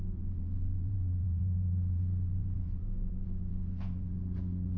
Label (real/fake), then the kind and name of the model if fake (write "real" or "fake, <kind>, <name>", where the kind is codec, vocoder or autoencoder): fake, vocoder, Vocos